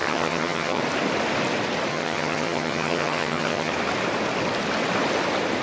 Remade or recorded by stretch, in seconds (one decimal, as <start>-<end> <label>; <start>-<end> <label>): 0.0-0.8 remade; 0.8-1.9 recorded; 1.9-3.7 remade; 3.7-5.6 recorded